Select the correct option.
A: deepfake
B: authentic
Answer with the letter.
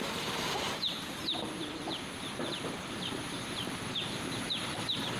A